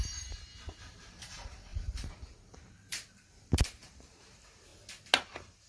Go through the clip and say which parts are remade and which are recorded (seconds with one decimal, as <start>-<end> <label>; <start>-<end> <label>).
0.0-0.5 remade; 0.5-1.1 recorded; 1.1-4.7 remade; 4.7-5.2 recorded; 5.2-5.7 remade